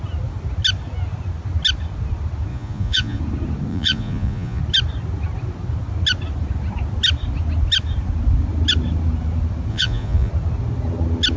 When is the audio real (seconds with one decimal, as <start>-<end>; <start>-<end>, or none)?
0.0-2.5; 3.2-3.7; 4.6-9.7; 10.3-11.4